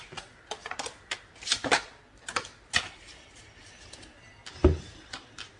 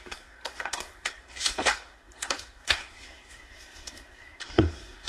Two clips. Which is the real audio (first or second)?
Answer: first